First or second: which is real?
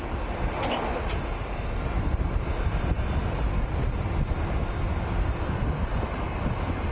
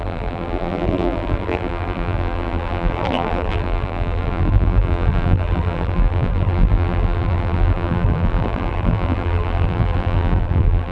first